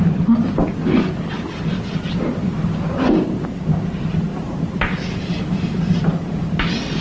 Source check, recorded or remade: recorded